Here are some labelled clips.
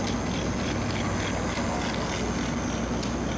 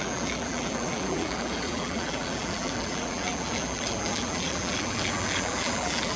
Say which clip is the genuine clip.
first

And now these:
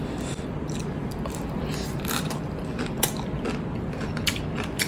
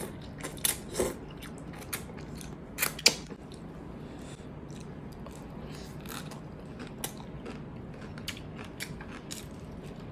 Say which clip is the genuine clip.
second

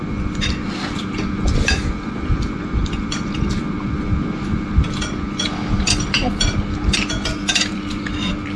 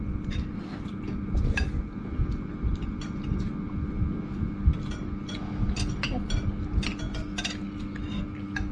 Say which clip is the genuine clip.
second